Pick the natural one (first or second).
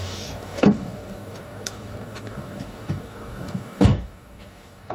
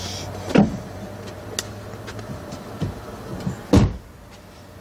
second